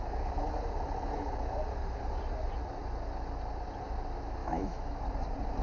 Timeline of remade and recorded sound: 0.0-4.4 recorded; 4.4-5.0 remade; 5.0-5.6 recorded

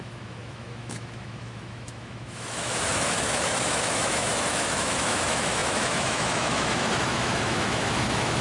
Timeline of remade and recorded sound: 0.0-8.4 remade

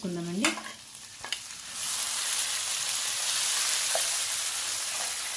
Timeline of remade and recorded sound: 0.0-5.4 recorded